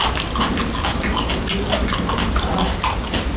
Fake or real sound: real